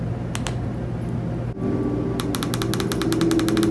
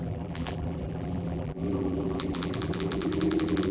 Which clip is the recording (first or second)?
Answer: first